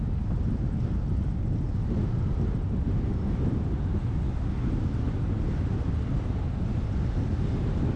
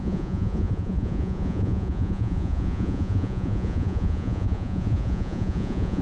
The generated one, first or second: second